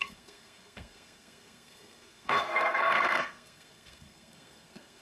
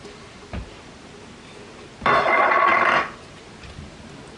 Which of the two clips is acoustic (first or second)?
second